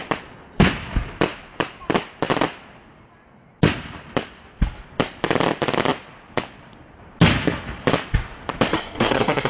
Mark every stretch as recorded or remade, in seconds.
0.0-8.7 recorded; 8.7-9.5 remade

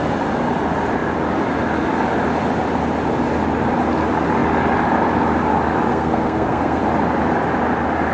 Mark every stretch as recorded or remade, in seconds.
0.0-5.9 recorded; 5.9-6.8 remade; 6.8-8.1 recorded

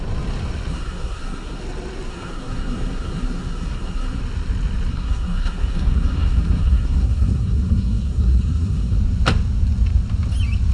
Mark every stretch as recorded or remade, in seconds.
0.0-0.7 recorded; 0.7-1.6 remade; 1.6-2.1 recorded; 2.1-4.2 remade; 4.2-4.9 recorded; 4.9-9.0 remade; 9.0-10.7 recorded